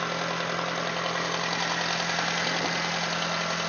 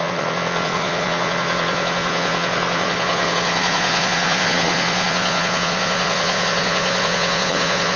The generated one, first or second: second